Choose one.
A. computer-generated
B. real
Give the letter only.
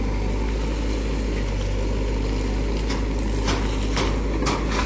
B